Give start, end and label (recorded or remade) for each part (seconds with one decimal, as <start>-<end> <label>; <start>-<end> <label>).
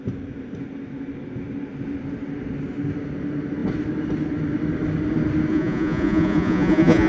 0.0-5.5 recorded; 5.5-7.1 remade